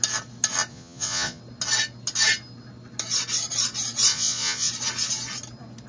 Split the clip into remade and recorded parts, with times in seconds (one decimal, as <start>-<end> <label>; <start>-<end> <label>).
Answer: 0.0-0.7 recorded; 0.7-1.4 remade; 1.4-4.1 recorded; 4.1-4.7 remade; 4.7-5.9 recorded